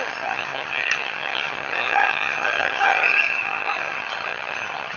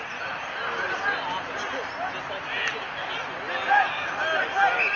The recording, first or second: second